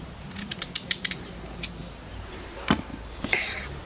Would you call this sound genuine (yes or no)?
yes